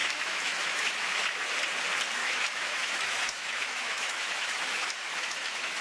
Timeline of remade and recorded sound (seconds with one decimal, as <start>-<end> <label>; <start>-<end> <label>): 0.0-1.5 remade; 1.5-2.2 recorded; 2.2-5.8 remade